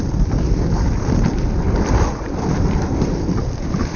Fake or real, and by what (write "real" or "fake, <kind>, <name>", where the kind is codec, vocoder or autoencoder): fake, vocoder, BigVGAN v2